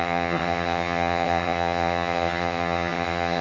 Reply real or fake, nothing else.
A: fake